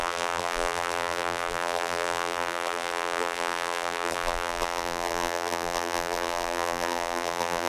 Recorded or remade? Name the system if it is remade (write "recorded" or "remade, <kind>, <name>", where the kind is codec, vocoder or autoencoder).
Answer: remade, vocoder, BigVGAN v2